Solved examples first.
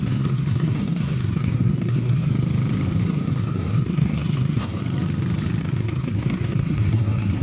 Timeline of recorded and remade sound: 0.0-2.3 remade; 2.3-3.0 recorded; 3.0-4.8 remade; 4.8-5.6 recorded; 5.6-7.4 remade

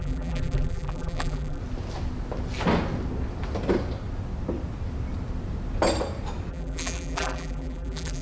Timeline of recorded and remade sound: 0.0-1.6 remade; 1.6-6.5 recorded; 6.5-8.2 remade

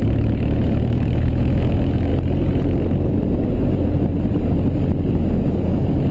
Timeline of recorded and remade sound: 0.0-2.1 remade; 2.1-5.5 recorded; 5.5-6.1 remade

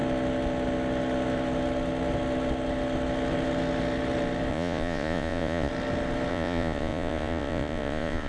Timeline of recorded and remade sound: 0.0-4.5 recorded; 4.5-5.7 remade; 5.7-6.3 recorded; 6.3-8.3 remade

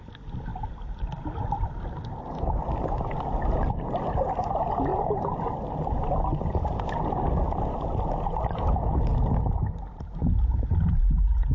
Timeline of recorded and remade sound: 0.0-11.5 recorded